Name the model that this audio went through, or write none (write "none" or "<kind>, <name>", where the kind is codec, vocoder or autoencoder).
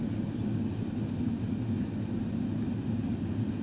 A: none